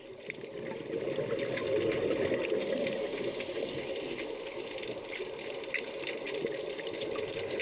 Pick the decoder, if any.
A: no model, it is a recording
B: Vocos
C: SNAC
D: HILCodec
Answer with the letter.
A